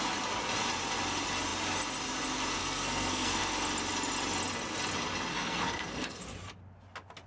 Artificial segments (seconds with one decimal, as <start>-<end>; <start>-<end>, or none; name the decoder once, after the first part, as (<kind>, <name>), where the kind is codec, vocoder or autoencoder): 2.6-3.4 (codec, SNAC); 5.3-6.2